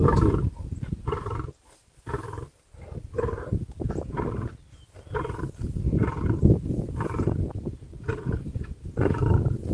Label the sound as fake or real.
real